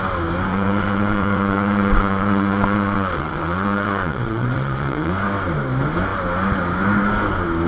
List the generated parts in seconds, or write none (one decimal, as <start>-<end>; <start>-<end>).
0.5-5.1